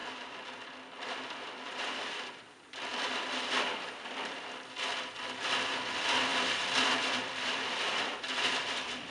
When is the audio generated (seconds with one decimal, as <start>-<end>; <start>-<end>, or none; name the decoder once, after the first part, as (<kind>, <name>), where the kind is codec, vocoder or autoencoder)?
2.9-4.3 (vocoder, BigVGAN v2); 6.3-9.1